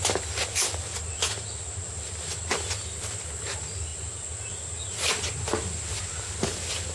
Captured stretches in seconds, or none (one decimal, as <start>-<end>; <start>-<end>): 0.0-6.9